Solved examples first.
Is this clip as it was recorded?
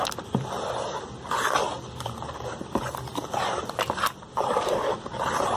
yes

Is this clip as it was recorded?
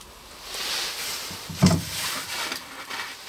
yes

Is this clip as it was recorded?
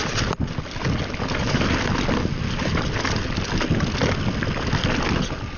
yes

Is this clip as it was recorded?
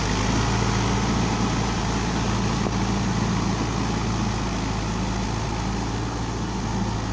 yes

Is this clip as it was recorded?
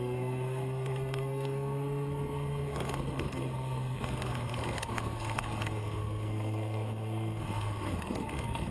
no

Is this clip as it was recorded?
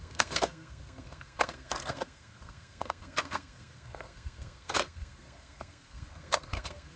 no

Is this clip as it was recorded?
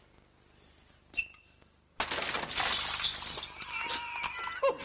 yes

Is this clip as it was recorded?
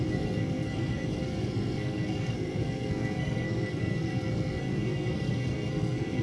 no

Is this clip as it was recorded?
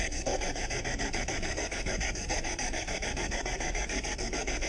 no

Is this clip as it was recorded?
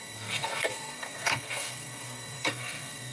no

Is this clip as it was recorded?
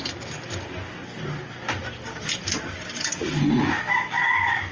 yes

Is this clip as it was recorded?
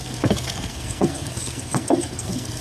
no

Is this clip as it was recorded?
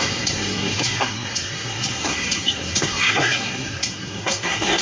no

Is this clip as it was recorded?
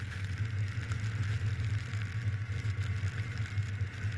yes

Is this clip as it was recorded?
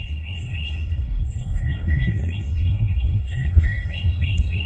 no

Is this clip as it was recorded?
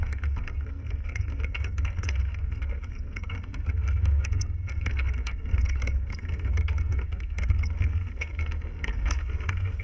no